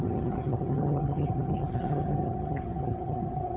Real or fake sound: fake